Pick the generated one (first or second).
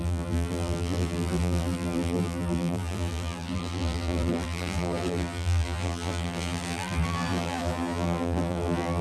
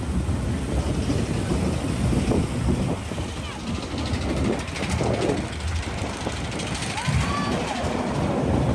first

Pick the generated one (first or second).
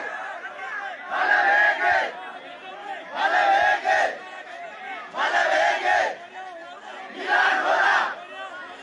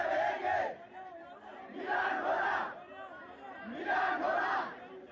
second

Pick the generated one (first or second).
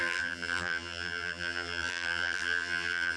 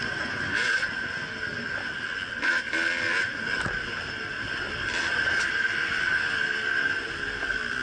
first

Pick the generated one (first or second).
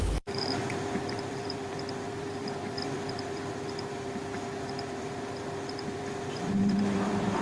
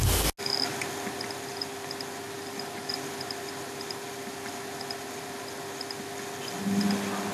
first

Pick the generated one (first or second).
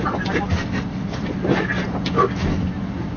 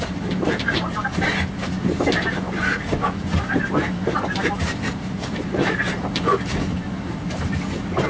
second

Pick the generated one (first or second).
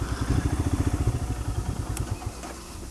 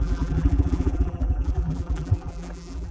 second